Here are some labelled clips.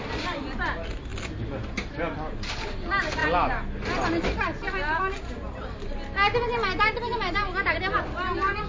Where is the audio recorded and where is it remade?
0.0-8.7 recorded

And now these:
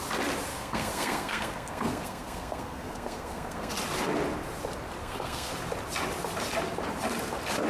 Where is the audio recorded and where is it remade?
0.0-0.5 recorded; 0.5-3.7 remade; 3.7-5.0 recorded; 5.0-5.5 remade; 5.5-7.7 recorded

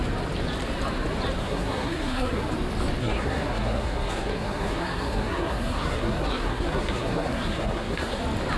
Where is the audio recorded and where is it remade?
0.0-1.4 recorded; 1.4-2.4 remade; 2.4-3.0 recorded; 3.0-8.2 remade; 8.2-8.6 recorded

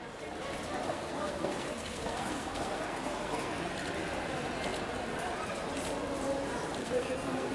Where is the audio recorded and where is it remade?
0.0-0.8 recorded; 0.8-3.7 remade; 3.7-6.8 recorded; 6.8-7.5 remade

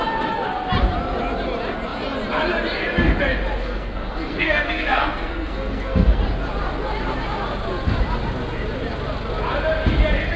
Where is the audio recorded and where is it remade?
0.0-3.6 recorded; 3.6-6.2 remade; 6.2-10.4 recorded

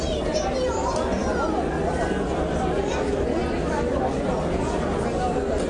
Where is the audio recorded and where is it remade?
0.0-5.7 recorded